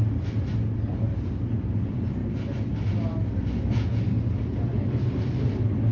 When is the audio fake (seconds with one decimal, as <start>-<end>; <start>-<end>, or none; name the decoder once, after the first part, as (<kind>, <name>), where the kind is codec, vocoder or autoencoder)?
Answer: none